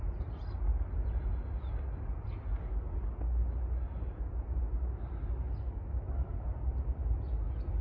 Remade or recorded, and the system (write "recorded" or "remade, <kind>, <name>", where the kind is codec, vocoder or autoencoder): recorded